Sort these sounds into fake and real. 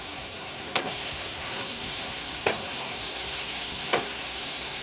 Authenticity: fake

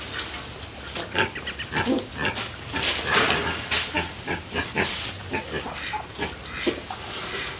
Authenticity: real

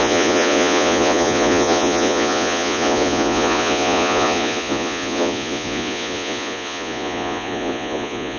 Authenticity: fake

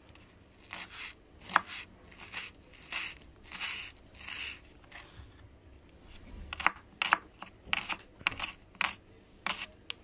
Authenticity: real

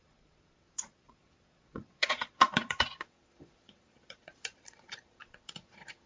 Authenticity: fake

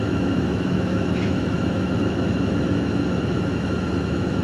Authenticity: fake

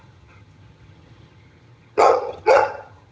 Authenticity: fake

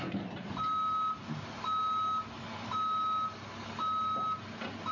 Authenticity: real